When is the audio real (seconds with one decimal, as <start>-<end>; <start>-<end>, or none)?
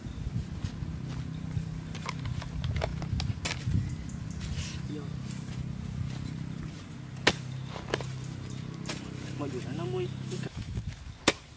0.0-9.7; 10.8-11.6